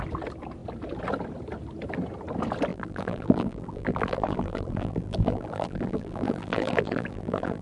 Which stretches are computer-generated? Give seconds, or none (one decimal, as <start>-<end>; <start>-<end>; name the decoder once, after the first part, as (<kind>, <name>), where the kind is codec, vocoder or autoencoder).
2.7-7.6 (vocoder, BigVGAN v2)